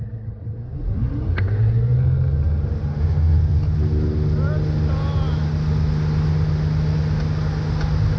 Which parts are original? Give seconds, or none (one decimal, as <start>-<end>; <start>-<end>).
0.0-2.9; 3.4-8.2